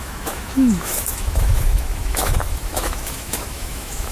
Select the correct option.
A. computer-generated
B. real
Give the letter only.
A